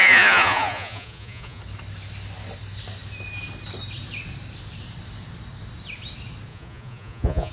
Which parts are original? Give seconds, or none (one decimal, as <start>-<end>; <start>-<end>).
1.6-6.5